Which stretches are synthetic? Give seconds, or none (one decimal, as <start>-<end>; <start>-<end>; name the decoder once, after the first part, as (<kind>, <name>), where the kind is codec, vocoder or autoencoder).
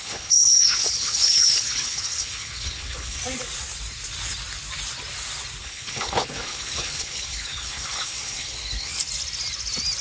0.0-3.2 (codec, HILCodec); 5.6-8.9